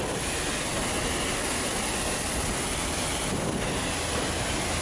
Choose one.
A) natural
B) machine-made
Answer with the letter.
A